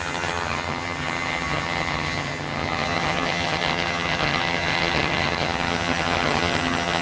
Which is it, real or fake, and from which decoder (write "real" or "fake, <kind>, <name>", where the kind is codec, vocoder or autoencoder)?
fake, vocoder, HiFi-GAN